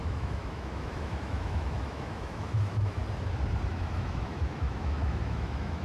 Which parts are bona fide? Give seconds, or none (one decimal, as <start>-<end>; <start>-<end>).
3.0-3.7